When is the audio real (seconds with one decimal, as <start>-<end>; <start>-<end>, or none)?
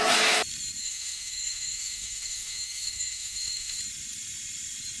0.0-0.8; 3.8-5.0